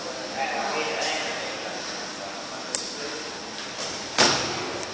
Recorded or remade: recorded